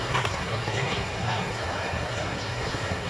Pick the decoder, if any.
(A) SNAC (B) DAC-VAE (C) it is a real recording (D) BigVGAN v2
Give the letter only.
A